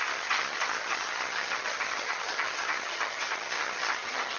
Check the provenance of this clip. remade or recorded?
remade